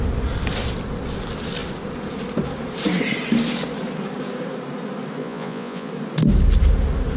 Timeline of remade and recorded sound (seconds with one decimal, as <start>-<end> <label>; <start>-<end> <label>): 0.0-5.2 recorded; 5.2-5.9 remade; 5.9-7.2 recorded